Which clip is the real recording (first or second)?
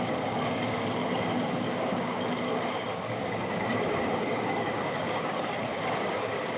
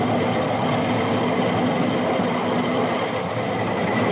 second